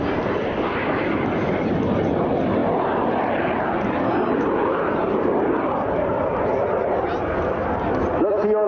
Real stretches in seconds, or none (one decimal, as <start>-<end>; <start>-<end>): 0.0-8.7